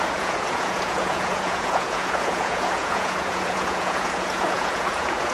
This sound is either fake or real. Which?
fake